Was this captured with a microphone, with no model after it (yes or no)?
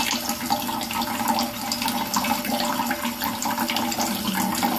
yes